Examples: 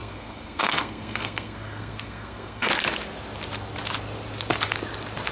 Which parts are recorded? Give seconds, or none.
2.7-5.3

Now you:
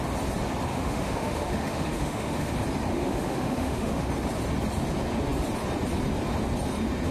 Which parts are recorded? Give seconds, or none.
0.0-0.7; 2.5-2.9; 4.1-7.1

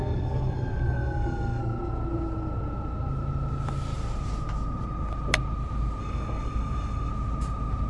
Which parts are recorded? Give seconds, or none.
1.6-6.0; 7.1-7.9

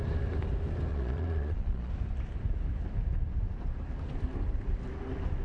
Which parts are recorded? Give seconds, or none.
0.0-0.9; 1.9-5.4

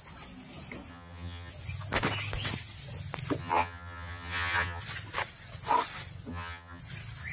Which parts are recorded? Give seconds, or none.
0.0-0.9; 1.5-3.4; 4.8-6.3; 6.8-7.3

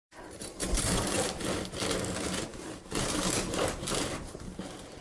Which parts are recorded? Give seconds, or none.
1.4-2.5; 3.9-5.0

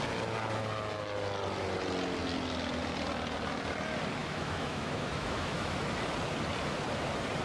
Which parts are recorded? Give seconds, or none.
0.0-4.2; 5.8-7.4